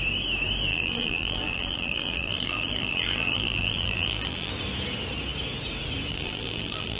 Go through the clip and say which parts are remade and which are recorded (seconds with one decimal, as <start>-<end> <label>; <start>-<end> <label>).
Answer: 0.0-0.7 recorded; 0.7-4.5 remade; 4.5-6.1 recorded; 6.1-7.0 remade